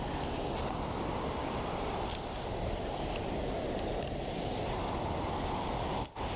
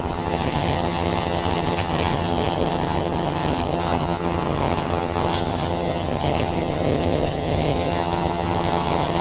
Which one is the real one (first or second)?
first